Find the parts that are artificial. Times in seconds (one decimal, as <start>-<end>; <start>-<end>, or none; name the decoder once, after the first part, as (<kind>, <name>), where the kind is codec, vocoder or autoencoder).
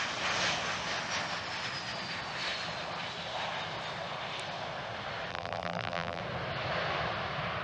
5.3-6.2 (vocoder, BigVGAN v2)